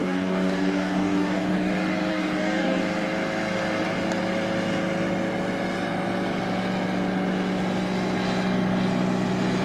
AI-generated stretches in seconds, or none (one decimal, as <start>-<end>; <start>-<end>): 0.0-1.7; 2.1-2.8